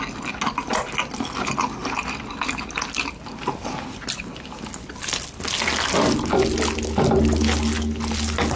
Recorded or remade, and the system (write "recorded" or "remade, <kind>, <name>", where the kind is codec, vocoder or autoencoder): recorded